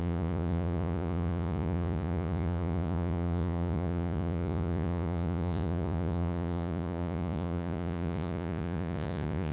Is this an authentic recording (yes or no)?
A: no